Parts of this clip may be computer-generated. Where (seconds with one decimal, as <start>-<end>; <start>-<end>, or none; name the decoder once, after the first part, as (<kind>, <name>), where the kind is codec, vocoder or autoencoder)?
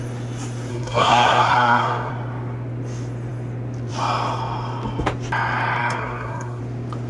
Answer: 0.7-2.1 (codec, SNAC); 5.8-6.6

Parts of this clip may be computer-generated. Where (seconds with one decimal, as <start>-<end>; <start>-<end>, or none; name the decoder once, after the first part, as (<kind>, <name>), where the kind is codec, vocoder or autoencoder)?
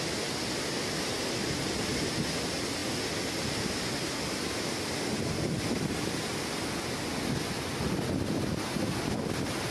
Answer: none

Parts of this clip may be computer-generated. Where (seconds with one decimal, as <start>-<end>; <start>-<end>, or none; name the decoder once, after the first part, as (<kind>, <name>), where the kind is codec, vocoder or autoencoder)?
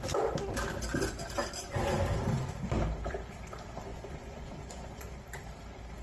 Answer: 3.9-5.2 (vocoder, Vocos)